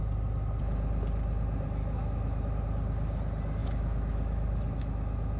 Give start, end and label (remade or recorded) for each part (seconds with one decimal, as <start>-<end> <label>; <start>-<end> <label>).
0.0-1.8 recorded; 1.8-2.5 remade; 2.5-3.6 recorded; 3.6-5.4 remade